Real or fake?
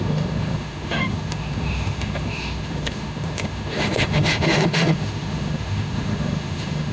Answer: fake